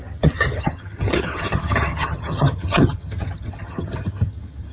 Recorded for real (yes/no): no